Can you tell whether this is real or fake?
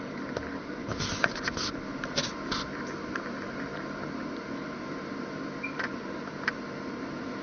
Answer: real